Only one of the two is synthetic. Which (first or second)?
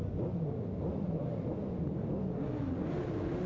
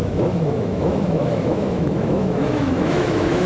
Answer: second